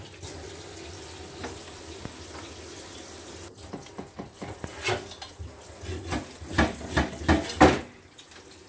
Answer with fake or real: real